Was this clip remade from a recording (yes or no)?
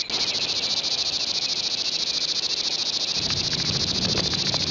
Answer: no